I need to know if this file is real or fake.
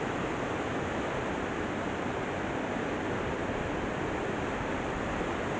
real